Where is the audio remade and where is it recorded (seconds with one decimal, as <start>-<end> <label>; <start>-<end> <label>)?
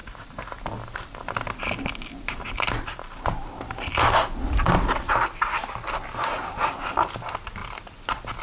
0.0-8.4 recorded